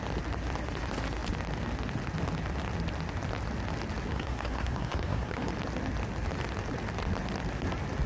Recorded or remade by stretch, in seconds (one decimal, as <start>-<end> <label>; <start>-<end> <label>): 0.0-4.1 recorded; 4.1-5.5 remade; 5.5-8.1 recorded